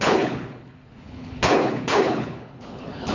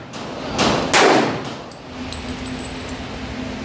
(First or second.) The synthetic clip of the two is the first